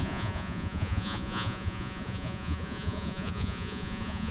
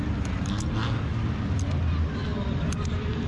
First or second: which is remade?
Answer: first